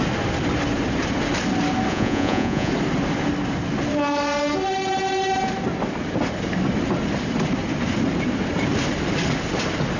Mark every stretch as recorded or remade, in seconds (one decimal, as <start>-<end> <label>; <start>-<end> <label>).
0.0-1.9 recorded; 1.9-2.7 remade; 2.7-10.0 recorded